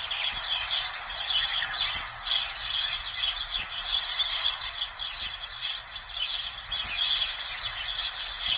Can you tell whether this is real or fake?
real